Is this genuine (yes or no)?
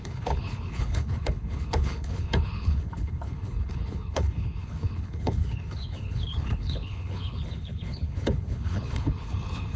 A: no